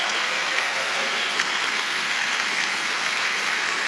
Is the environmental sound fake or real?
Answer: fake